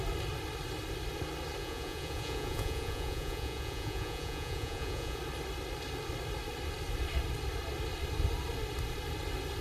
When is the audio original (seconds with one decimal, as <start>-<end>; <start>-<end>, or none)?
0.0-1.6; 5.2-9.6